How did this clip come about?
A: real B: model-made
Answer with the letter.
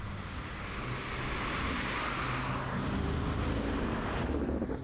A